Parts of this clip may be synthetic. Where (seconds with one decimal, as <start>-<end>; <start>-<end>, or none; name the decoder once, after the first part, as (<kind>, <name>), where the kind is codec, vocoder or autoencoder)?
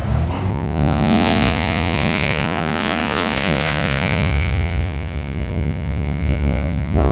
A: 0.5-7.1 (vocoder, Vocos)